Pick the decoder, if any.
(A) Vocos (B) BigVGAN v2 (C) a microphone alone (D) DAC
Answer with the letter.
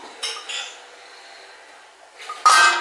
C